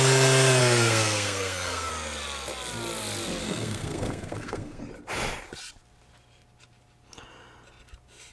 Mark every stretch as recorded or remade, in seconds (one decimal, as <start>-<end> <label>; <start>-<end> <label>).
0.0-0.6 recorded; 0.6-1.9 remade; 1.9-3.4 recorded; 3.4-4.8 remade; 4.8-8.3 recorded